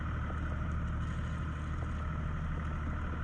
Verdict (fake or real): real